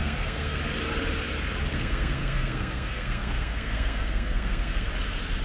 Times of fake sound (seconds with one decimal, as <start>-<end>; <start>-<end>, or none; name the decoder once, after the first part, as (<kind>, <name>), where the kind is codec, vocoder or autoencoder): 0.0-0.6 (codec, SNAC); 1.7-4.9